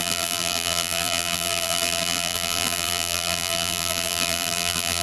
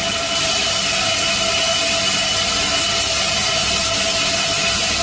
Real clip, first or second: second